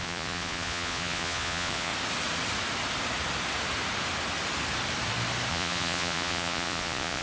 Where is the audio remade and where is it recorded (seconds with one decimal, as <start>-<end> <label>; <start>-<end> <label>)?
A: 0.0-1.9 remade; 1.9-5.5 recorded; 5.5-7.2 remade